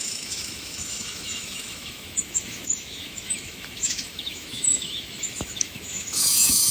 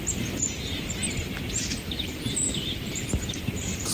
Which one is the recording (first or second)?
second